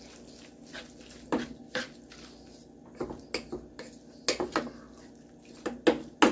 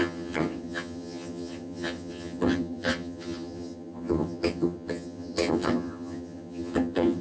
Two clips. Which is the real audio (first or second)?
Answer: first